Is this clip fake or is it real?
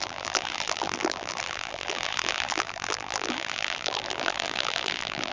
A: fake